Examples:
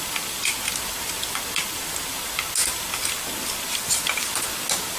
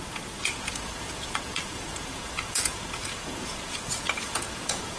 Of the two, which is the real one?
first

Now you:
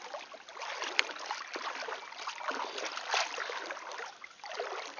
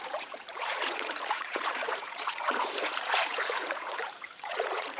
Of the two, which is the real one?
first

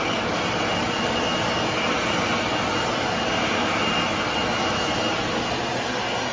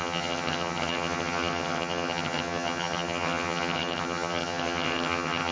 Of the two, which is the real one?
first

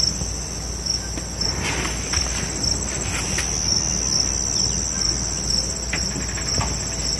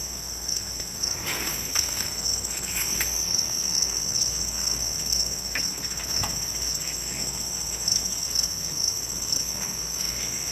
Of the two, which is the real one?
first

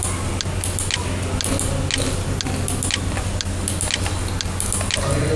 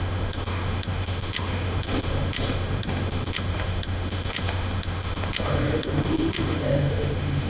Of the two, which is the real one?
first